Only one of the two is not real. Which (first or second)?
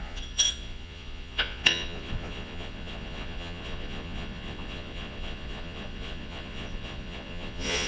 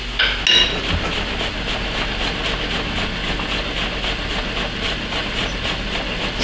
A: first